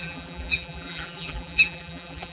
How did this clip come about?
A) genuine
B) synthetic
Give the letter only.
B